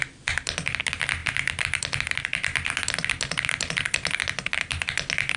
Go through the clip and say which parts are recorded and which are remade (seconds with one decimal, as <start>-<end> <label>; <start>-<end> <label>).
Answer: 0.0-5.4 recorded

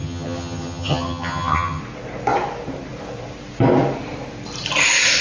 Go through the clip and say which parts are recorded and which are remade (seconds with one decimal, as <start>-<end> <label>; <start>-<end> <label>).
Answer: 0.0-1.8 remade; 1.8-5.2 recorded

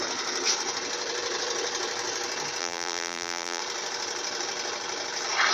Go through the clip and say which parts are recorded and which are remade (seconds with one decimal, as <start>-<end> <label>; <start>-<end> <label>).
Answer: 0.0-2.6 recorded; 2.6-3.6 remade; 3.6-5.5 recorded

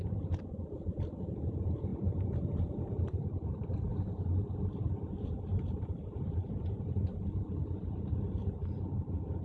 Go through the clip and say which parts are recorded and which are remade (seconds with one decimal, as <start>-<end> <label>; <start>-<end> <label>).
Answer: 0.0-3.9 remade; 3.9-5.2 recorded; 5.2-9.4 remade

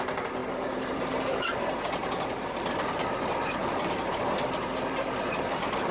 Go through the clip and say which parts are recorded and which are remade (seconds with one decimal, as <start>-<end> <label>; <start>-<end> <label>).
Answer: 0.0-5.9 remade